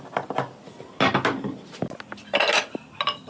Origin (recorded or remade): recorded